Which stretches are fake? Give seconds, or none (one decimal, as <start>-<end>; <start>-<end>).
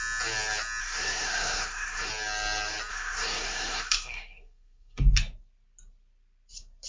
0.8-2.1; 2.9-5.0